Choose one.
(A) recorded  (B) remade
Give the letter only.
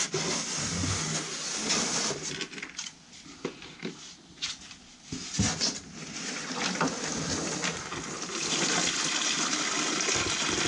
A